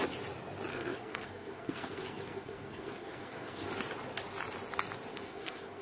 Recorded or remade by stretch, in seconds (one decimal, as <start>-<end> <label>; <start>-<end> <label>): 0.0-0.7 recorded; 0.7-3.7 remade; 3.7-5.1 recorded; 5.1-5.8 remade